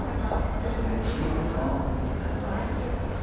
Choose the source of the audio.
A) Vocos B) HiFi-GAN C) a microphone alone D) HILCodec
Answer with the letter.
C